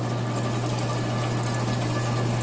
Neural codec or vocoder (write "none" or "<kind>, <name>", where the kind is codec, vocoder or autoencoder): none